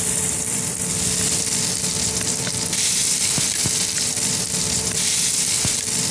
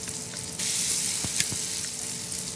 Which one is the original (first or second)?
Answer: second